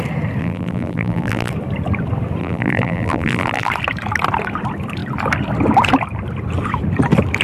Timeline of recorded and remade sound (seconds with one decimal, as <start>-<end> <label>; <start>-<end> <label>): 0.0-0.4 recorded; 0.4-1.5 remade; 1.5-2.4 recorded; 2.4-3.7 remade; 3.7-7.4 recorded